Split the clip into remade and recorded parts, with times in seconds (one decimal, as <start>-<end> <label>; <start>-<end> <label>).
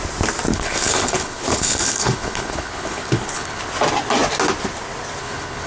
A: 0.0-0.5 recorded; 0.5-3.6 remade; 3.6-5.2 recorded; 5.2-5.7 remade